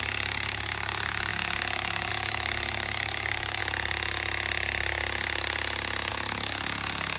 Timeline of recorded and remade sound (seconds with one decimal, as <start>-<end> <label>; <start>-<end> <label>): 0.0-3.6 remade; 3.6-6.1 recorded; 6.1-7.2 remade